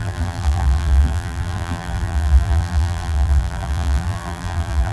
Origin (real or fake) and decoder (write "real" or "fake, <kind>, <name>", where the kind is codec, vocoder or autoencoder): fake, vocoder, BigVGAN v2